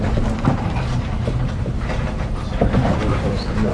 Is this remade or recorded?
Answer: recorded